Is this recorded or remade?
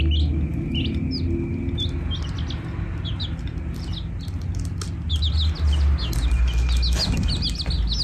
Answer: recorded